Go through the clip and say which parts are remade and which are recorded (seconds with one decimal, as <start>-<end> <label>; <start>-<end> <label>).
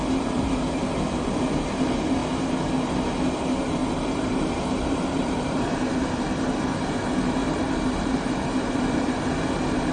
0.0-3.8 recorded; 3.8-5.8 remade; 5.8-7.4 recorded; 7.4-9.4 remade; 9.4-9.9 recorded